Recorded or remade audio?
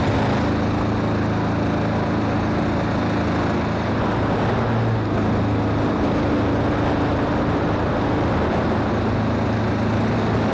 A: recorded